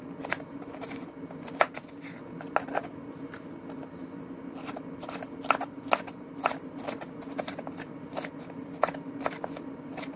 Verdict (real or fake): real